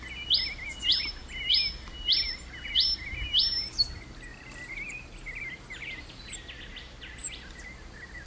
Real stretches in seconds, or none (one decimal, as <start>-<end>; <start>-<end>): 0.0-4.3; 6.3-7.2